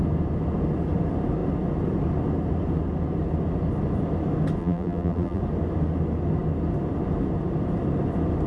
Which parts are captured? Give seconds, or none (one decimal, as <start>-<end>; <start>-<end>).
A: 0.0-4.6; 5.4-8.5